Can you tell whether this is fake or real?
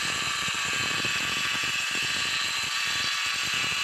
real